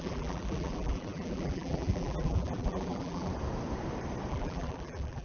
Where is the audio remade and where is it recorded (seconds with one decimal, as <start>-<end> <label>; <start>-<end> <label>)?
0.0-3.3 remade; 3.3-4.3 recorded; 4.3-5.2 remade